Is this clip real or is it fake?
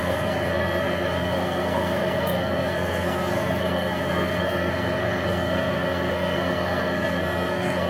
fake